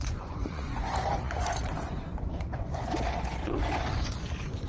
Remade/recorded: remade